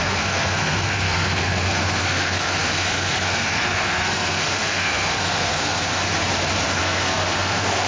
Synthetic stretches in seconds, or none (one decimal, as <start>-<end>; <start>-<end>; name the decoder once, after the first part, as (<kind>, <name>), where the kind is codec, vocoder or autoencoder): 0.0-6.0 (codec, SNAC); 6.8-7.9